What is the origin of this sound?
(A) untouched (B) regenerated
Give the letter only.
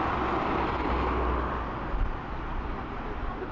A